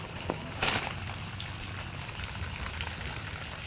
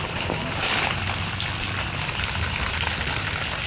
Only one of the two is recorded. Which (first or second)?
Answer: second